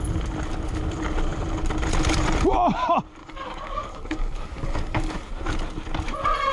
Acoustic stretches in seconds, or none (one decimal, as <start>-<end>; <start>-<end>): 0.0-3.2; 5.3-6.5